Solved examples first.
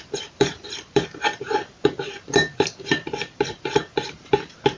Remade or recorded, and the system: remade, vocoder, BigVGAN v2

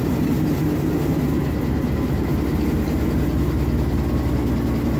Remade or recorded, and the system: recorded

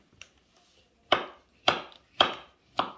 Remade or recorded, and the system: remade, vocoder, BigVGAN v2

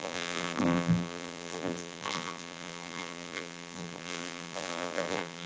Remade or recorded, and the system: remade, vocoder, BigVGAN v2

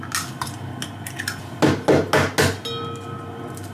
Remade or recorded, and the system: recorded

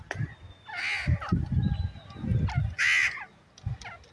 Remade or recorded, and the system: recorded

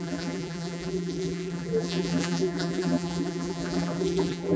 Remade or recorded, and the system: remade, vocoder, BigVGAN v2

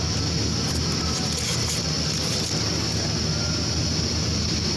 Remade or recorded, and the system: recorded